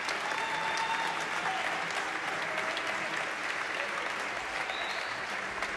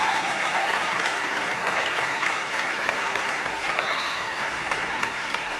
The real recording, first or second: first